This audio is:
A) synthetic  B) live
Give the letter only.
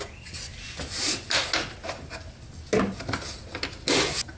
B